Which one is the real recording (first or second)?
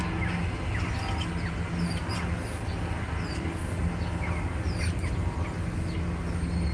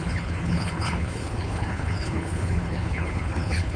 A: first